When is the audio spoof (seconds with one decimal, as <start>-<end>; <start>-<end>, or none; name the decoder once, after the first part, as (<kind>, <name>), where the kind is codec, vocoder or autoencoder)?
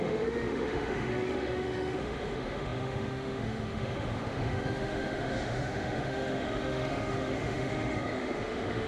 0.0-8.9 (autoencoder, DAC-VAE)